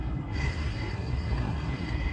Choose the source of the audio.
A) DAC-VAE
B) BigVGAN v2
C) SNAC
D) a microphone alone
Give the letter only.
C